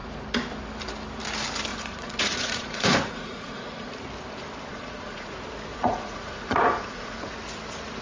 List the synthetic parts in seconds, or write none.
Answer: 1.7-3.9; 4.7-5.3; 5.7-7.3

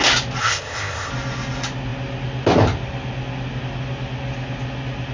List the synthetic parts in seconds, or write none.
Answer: 0.4-1.1